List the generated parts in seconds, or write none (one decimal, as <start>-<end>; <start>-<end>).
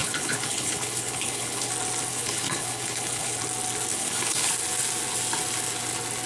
0.0-1.7; 2.1-3.4; 3.9-4.5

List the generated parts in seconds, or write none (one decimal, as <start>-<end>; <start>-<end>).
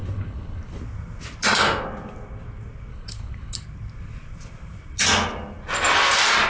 0.0-0.8; 2.9-3.6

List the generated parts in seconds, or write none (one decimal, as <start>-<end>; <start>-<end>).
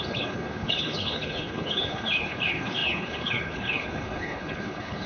0.0-5.1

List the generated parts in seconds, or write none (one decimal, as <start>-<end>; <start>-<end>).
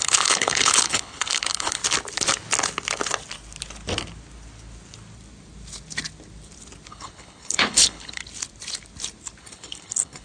0.0-1.8; 6.9-8.2; 9.4-10.2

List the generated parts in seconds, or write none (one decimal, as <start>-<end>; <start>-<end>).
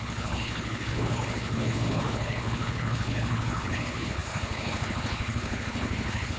0.0-6.4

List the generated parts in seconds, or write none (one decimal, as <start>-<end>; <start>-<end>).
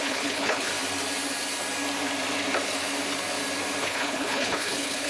0.0-0.7; 3.8-5.1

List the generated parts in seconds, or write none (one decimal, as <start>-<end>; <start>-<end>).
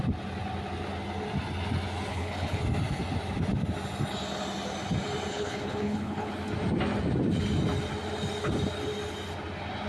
2.1-2.6; 5.3-6.3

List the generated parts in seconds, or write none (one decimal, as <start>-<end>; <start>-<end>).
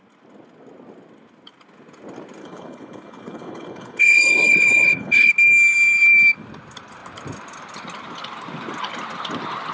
2.4-5.3